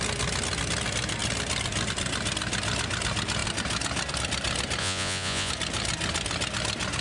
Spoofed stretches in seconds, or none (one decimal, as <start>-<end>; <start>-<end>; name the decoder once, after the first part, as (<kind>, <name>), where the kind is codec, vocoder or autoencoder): 4.8-5.5 (vocoder, Vocos)